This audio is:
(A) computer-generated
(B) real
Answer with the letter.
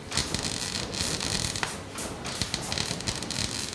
B